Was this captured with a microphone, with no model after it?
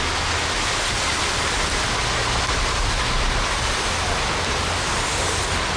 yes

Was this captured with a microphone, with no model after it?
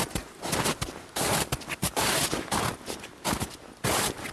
yes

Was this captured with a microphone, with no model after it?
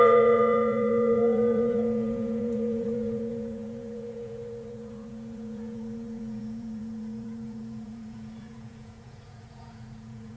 no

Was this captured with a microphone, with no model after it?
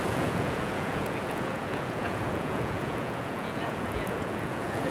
no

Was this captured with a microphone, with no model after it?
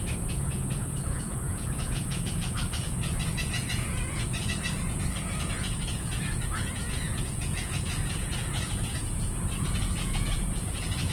no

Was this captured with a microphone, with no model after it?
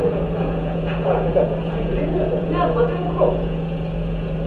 no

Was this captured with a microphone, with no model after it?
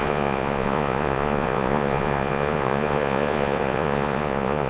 no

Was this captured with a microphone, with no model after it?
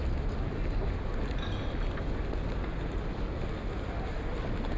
yes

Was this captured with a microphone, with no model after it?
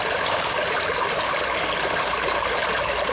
yes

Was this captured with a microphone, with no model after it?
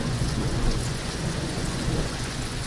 no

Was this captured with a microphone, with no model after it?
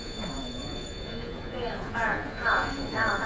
no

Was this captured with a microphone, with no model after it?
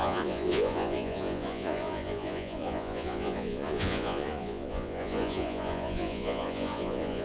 no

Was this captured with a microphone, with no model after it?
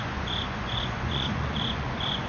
no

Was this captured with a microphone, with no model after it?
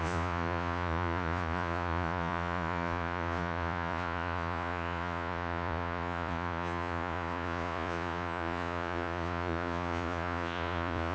no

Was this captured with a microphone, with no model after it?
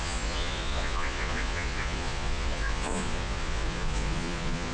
no